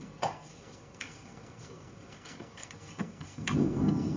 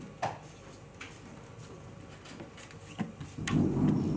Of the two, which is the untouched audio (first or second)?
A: second